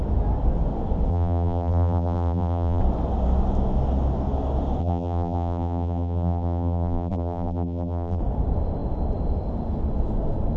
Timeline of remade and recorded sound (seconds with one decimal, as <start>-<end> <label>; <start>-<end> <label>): 0.0-1.1 recorded; 1.1-2.8 remade; 2.8-4.8 recorded; 4.8-8.2 remade; 8.2-10.6 recorded